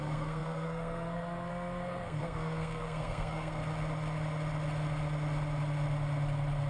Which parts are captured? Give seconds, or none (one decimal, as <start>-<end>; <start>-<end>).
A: 3.6-6.7